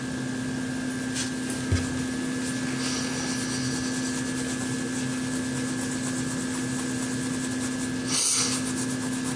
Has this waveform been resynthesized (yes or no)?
no